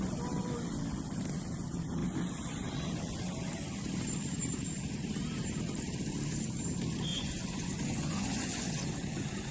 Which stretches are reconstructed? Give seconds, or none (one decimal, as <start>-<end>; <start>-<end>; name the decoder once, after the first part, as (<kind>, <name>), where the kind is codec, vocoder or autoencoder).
7.1-9.5 (vocoder, Vocos)